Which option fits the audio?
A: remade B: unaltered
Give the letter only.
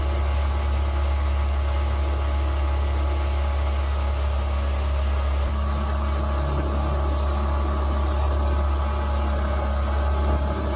B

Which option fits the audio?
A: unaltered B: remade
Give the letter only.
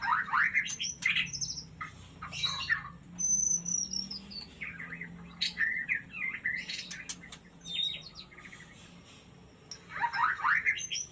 A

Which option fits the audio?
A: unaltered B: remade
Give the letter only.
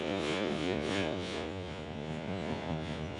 B